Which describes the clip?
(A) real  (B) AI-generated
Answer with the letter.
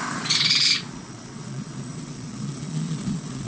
B